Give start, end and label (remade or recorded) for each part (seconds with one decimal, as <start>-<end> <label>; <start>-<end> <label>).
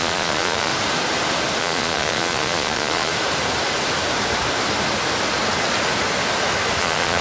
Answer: 0.0-0.7 remade; 0.7-1.6 recorded; 1.6-3.1 remade; 3.1-6.8 recorded; 6.8-7.2 remade